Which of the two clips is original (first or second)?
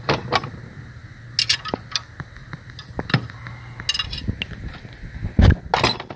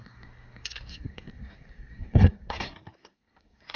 first